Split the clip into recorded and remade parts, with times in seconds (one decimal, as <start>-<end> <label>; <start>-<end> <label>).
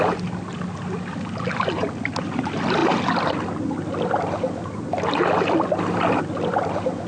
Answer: 0.0-7.1 recorded